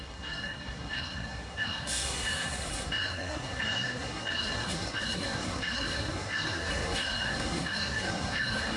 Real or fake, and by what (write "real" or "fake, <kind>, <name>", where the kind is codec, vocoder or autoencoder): fake, codec, SNAC